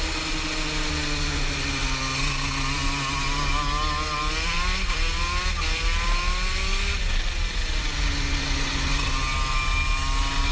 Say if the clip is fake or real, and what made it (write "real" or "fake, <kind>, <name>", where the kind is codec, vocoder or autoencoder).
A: real